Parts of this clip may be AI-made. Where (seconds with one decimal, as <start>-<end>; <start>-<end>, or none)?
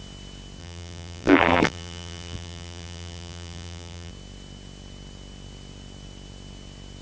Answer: 0.6-4.1